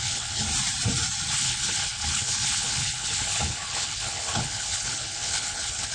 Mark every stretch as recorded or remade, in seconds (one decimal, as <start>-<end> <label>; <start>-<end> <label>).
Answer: 0.0-0.5 remade; 0.5-1.3 recorded; 1.3-5.9 remade